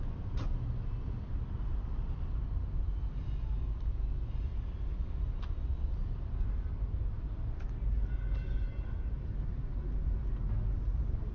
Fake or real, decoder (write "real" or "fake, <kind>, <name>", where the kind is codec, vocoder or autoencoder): real